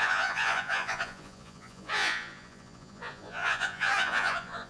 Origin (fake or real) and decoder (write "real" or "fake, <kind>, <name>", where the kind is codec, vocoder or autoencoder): fake, vocoder, Vocos